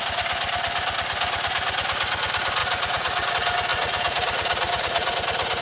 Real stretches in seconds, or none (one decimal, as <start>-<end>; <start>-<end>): 0.0-2.6; 3.3-3.7; 5.1-5.6